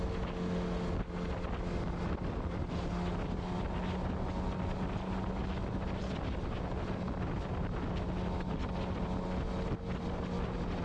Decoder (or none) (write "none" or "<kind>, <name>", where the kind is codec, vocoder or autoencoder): none